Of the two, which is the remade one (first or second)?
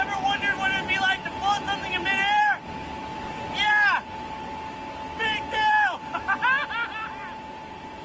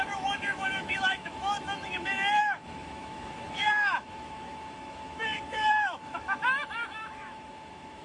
second